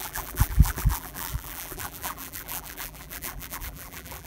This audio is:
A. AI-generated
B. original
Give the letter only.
A